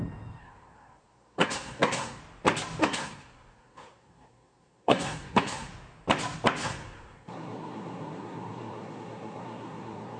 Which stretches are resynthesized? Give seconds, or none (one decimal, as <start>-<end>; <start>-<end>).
0.4-2.2; 2.8-5.7; 6.6-10.2